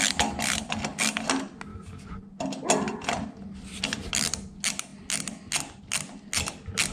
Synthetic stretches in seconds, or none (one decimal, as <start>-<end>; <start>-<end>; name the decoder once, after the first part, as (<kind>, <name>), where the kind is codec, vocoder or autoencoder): 1.7-2.2 (codec, DAC)